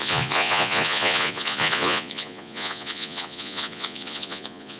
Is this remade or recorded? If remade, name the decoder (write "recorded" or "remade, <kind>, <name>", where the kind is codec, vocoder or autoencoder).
remade, vocoder, Vocos